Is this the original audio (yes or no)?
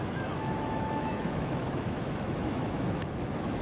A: no